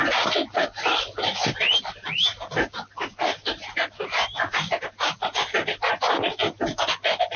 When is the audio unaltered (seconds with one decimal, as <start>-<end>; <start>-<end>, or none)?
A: 0.0-7.4